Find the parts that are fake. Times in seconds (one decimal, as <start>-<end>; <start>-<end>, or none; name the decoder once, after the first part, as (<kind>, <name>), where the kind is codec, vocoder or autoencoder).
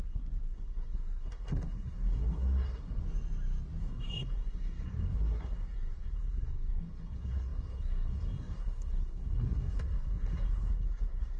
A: 0.0-3.0 (codec, SNAC); 3.8-11.4